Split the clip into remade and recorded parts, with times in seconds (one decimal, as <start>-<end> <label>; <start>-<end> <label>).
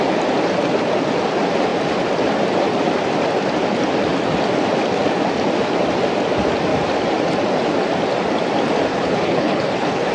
0.0-8.9 recorded; 8.9-10.1 remade